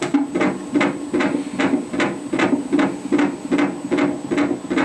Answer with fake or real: real